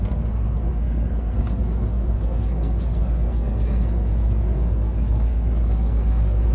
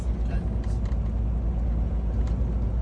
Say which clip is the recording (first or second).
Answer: second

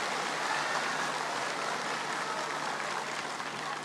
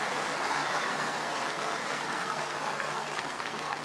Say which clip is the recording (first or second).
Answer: first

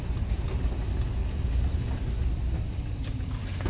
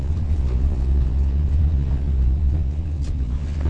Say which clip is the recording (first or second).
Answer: first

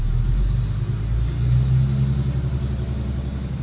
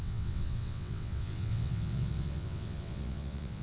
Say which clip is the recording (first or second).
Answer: first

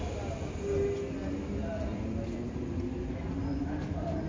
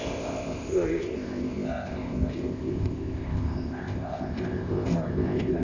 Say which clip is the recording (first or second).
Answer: first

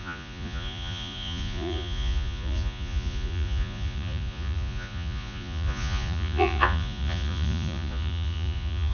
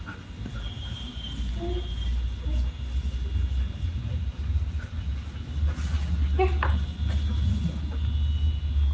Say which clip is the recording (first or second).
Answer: second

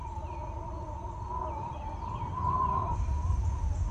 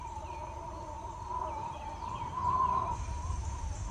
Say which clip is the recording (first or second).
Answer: first